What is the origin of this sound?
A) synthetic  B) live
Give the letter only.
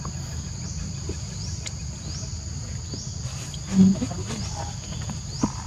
B